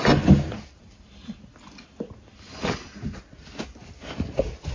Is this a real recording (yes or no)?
yes